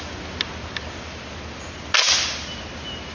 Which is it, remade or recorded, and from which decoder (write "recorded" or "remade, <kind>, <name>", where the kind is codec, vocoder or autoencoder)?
recorded